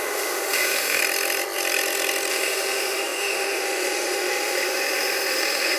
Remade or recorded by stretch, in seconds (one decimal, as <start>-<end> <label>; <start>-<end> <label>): 0.0-1.0 remade; 1.0-2.3 recorded; 2.3-5.8 remade